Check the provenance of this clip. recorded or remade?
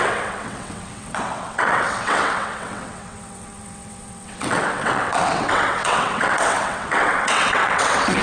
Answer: remade